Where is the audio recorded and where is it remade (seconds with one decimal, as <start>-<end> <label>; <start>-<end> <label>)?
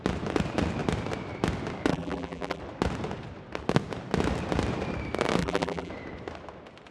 0.0-1.9 recorded; 1.9-2.6 remade; 2.6-5.4 recorded; 5.4-5.9 remade; 5.9-6.9 recorded